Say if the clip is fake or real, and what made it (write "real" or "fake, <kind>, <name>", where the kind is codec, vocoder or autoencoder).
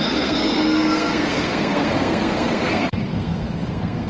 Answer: fake, codec, SNAC